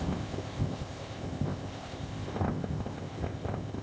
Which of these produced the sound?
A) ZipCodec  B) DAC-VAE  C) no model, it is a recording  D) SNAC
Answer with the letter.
A